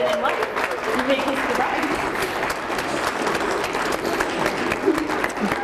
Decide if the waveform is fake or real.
real